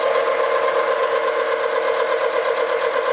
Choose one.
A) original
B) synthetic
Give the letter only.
A